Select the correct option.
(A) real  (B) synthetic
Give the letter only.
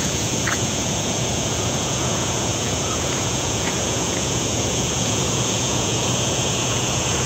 B